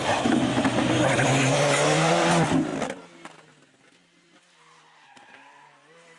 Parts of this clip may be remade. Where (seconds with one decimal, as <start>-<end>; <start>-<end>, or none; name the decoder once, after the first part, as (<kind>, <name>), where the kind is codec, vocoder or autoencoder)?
none